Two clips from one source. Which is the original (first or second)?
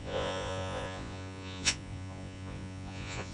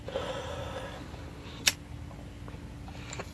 second